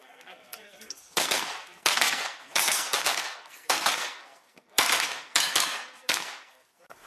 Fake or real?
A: fake